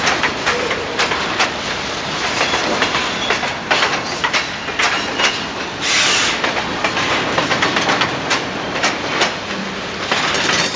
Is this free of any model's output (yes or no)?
yes